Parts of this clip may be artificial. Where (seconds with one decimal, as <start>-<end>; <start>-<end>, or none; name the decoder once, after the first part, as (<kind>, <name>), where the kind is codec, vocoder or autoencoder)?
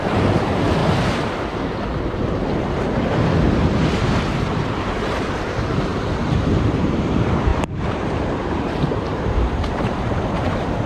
0.0-0.8 (vocoder, BigVGAN v2); 4.3-10.9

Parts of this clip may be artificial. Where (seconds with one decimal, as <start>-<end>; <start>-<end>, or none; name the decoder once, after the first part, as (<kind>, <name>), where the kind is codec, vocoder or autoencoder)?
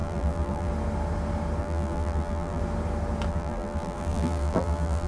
0.0-0.7 (vocoder, BigVGAN v2); 1.6-2.6; 3.3-5.1